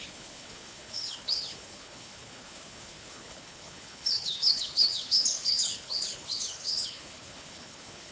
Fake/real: fake